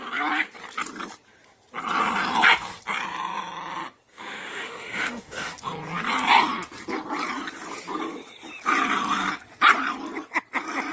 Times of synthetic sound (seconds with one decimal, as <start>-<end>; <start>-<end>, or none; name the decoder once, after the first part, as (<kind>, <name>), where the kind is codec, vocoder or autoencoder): 4.1-5.5 (autoencoder, DAC-VAE)